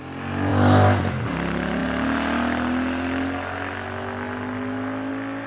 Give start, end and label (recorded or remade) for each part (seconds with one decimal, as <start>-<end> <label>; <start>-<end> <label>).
0.0-5.5 recorded